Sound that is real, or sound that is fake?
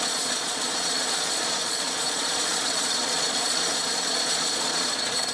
fake